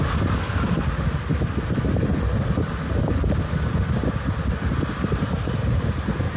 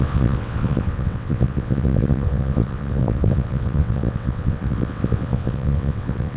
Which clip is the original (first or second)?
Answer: first